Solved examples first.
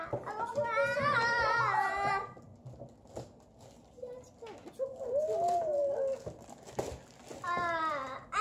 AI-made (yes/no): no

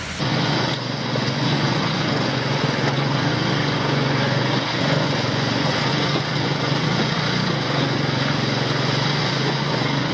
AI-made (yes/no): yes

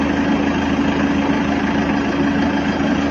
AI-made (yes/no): no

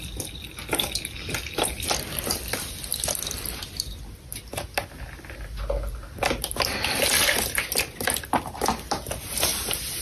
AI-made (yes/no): no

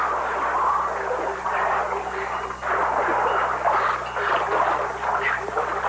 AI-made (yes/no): no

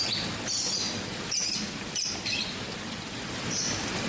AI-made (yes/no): no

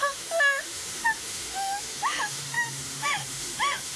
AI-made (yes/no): yes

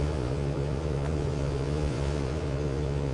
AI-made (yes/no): yes